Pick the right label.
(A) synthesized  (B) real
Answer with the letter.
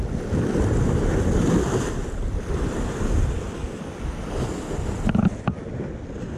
B